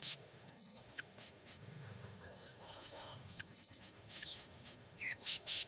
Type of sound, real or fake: fake